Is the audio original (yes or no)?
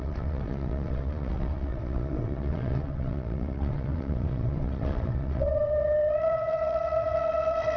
no